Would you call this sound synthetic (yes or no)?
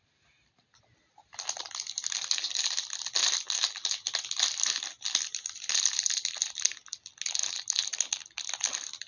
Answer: no